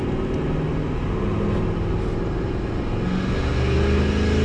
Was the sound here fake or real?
real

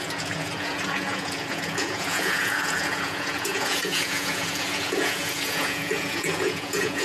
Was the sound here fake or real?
fake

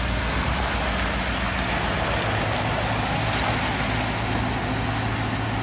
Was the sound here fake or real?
real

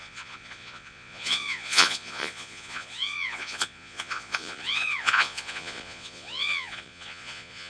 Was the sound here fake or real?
fake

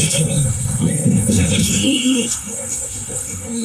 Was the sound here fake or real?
fake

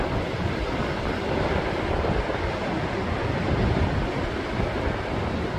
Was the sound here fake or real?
fake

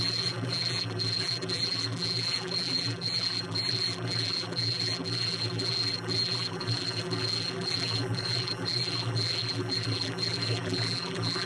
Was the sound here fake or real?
fake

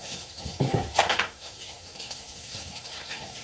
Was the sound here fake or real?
fake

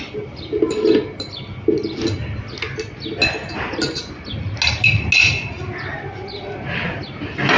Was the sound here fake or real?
real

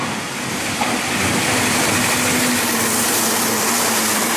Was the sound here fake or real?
real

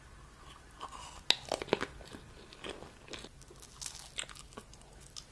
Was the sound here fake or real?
real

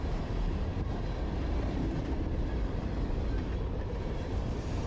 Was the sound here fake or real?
fake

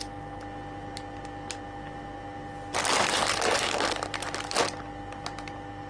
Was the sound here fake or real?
real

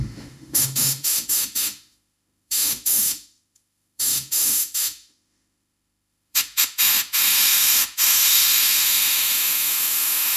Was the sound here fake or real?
fake